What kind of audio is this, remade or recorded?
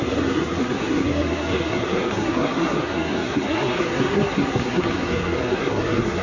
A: remade